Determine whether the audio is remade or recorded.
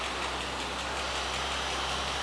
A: recorded